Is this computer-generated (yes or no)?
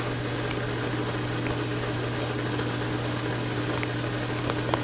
no